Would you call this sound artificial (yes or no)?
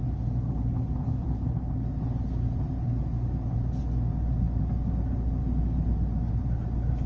no